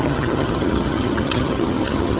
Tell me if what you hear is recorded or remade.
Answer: remade